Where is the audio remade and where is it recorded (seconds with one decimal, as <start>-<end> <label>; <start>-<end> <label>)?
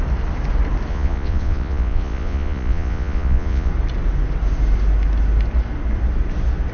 0.0-0.9 recorded; 0.9-3.7 remade; 3.7-6.7 recorded